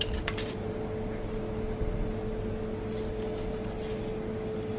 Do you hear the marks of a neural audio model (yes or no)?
no